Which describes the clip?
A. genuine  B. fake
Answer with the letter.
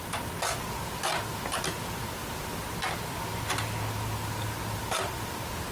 A